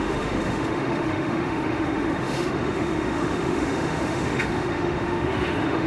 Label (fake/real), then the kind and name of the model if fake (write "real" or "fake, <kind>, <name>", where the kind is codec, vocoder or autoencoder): fake, autoencoder, DAC-VAE